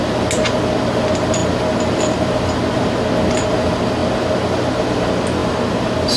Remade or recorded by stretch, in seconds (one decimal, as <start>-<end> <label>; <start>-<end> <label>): 0.0-6.2 recorded